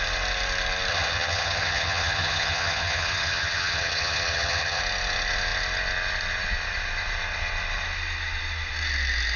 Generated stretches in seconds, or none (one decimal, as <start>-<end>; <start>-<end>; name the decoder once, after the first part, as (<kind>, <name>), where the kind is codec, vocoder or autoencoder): 0.9-4.8 (vocoder, HiFi-GAN)